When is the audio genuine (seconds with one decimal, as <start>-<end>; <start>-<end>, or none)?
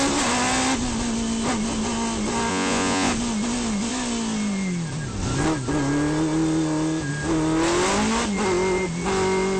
0.0-2.5; 3.1-9.6